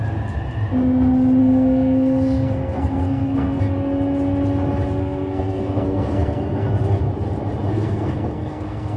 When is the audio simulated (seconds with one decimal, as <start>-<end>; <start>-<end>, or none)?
1.4-3.6; 5.0-7.0; 7.7-9.0